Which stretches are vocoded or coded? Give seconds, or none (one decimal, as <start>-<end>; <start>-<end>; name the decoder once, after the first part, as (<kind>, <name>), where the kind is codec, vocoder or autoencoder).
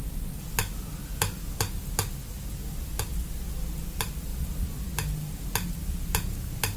none